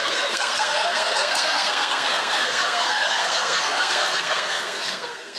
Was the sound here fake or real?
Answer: fake